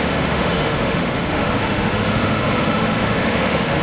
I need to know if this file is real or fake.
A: fake